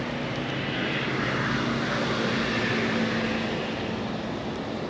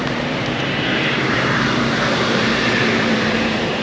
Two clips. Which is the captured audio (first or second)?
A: first